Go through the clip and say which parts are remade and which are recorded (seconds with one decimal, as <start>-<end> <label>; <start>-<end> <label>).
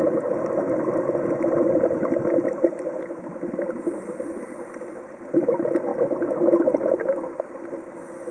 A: 0.0-8.3 recorded